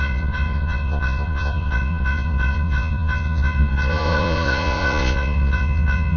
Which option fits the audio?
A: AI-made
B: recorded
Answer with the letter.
A